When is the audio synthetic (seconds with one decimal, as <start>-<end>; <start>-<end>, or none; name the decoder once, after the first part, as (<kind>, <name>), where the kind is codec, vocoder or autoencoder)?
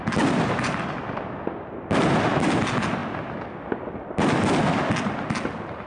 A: none